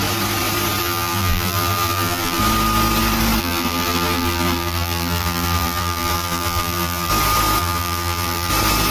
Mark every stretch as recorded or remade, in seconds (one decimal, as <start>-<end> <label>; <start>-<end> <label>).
0.0-0.8 recorded; 0.8-2.4 remade; 2.4-3.4 recorded; 3.4-7.1 remade; 7.1-7.6 recorded; 7.6-8.5 remade; 8.5-8.9 recorded